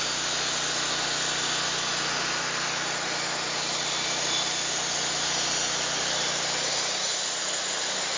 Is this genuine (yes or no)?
yes